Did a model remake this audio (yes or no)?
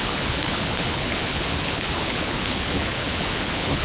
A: yes